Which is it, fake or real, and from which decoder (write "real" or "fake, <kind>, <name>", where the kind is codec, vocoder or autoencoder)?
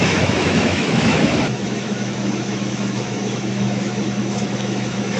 fake, autoencoder, DAC-VAE